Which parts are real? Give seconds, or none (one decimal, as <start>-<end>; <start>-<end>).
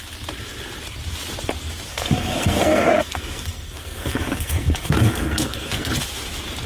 0.0-1.9; 5.9-6.7